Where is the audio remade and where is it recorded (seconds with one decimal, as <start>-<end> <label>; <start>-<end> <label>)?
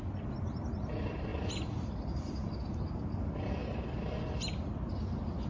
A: 0.0-5.5 recorded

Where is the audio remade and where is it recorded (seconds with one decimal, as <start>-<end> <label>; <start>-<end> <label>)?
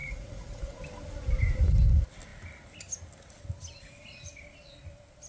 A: 0.0-0.8 remade; 0.8-5.3 recorded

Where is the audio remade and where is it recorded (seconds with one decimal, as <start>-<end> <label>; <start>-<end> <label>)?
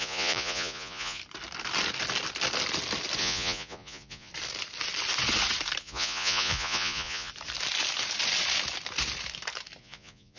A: 0.0-1.2 remade; 1.2-3.2 recorded; 3.2-4.3 remade; 4.3-5.8 recorded; 5.8-7.3 remade; 7.3-9.8 recorded; 9.8-10.4 remade